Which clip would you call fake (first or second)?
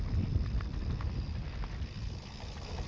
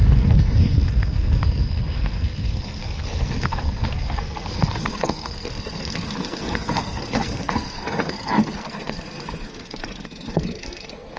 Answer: second